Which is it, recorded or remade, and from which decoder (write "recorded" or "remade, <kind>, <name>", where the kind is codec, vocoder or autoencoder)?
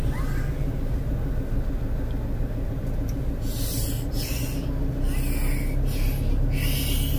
recorded